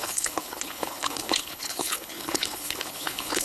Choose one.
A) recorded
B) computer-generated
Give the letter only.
B